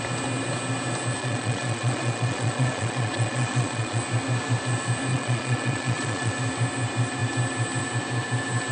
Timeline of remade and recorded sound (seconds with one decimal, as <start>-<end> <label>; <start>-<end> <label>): 0.0-1.2 recorded; 1.2-4.0 remade; 4.0-5.1 recorded; 5.1-6.3 remade; 6.3-8.7 recorded